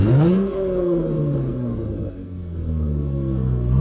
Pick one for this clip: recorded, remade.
remade